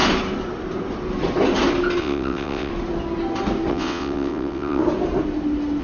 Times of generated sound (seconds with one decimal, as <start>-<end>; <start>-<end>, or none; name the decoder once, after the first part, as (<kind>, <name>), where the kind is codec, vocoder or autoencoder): 2.0-2.7 (vocoder, WaveNeXt); 3.7-4.8

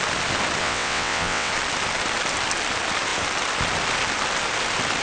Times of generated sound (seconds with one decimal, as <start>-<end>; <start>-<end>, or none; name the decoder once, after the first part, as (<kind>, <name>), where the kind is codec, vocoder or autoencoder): 0.6-1.5 (vocoder, WaveNeXt)